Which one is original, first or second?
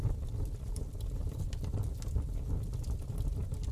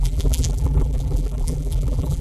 first